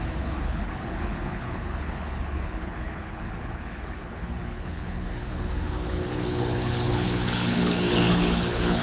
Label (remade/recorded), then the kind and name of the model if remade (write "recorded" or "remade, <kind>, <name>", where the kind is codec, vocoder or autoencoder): remade, codec, HILCodec